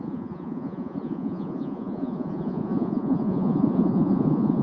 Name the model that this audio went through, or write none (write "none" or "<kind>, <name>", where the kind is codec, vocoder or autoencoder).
vocoder, Vocos